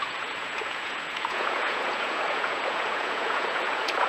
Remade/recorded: remade